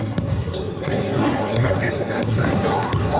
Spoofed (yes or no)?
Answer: yes